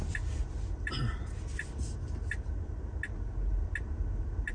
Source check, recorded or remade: recorded